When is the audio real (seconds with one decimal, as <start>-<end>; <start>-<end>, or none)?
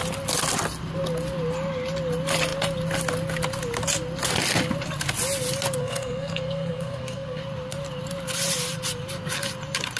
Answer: 0.0-5.8; 7.4-10.0